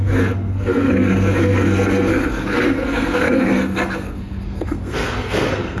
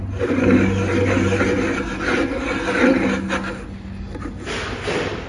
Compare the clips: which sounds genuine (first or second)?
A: second